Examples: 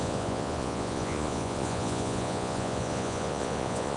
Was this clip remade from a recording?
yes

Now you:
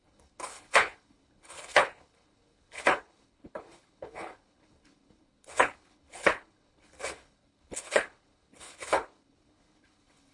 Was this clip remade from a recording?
yes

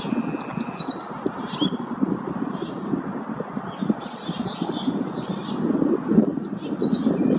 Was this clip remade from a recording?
no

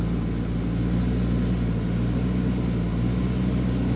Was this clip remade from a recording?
no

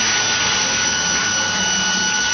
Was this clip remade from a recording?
no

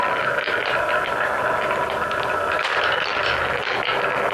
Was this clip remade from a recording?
no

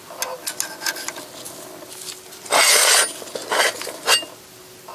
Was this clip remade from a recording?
no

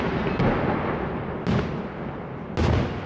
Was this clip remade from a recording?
no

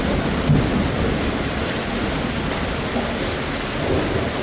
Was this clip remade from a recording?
no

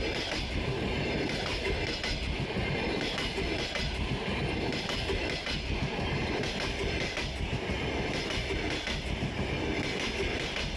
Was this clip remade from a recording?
no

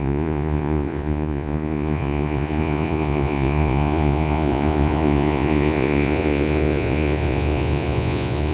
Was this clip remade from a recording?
yes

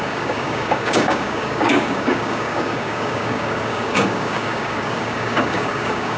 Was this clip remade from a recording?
yes